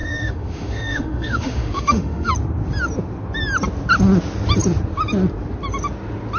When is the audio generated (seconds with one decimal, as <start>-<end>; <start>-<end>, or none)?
0.0-2.3